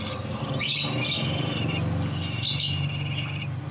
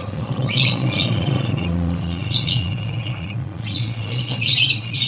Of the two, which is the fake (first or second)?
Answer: second